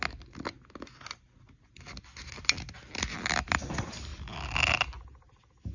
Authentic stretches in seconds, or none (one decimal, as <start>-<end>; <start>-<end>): 0.0-5.7